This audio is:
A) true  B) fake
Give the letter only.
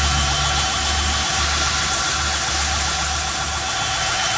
A